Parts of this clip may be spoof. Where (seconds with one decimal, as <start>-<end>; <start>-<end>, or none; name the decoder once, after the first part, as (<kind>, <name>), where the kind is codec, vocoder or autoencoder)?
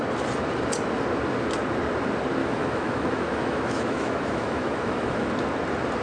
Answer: 2.4-5.3 (autoencoder, DAC-VAE)